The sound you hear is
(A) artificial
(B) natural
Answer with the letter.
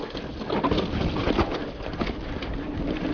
B